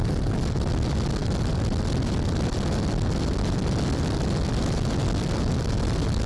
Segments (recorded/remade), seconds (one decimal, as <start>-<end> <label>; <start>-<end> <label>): 0.0-6.3 recorded